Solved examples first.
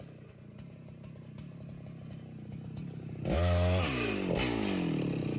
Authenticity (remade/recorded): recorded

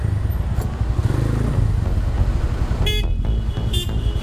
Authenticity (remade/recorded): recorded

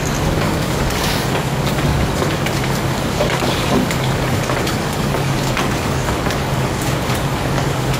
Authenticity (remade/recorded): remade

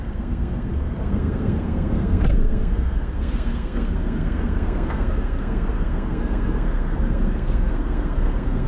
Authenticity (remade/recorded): remade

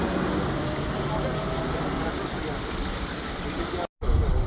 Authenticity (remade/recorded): recorded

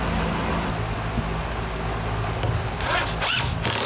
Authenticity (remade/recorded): recorded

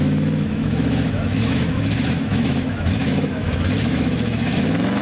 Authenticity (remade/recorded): remade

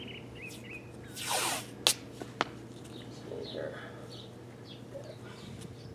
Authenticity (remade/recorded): recorded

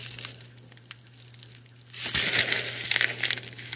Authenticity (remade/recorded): recorded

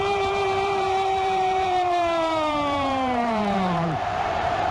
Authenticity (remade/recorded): remade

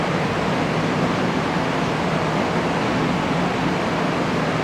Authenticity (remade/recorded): recorded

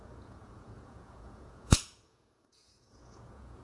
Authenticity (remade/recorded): remade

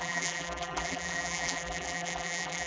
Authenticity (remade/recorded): remade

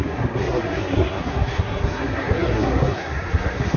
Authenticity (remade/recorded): remade